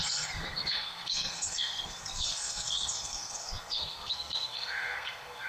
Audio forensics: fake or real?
fake